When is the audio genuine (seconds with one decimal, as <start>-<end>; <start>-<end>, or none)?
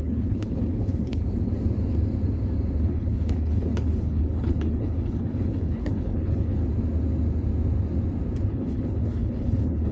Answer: 1.2-2.8; 6.6-8.5